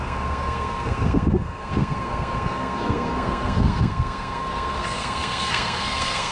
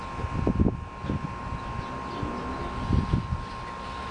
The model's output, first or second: first